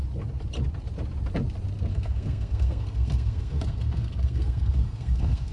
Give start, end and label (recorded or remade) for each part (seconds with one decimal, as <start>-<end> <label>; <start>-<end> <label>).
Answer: 0.0-1.9 recorded; 1.9-5.5 remade